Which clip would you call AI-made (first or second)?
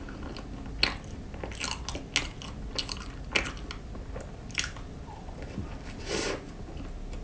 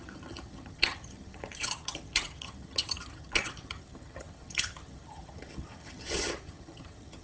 second